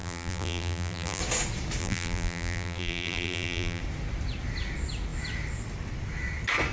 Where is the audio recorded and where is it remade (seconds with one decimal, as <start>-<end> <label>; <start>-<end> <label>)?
0.0-1.2 remade; 1.2-1.8 recorded; 1.8-3.8 remade; 3.8-6.7 recorded